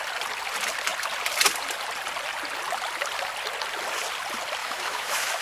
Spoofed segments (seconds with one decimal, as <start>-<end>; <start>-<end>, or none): 4.6-5.4